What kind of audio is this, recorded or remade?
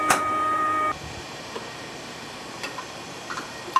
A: remade